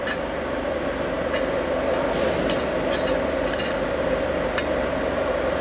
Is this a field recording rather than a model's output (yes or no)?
yes